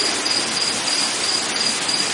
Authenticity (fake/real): real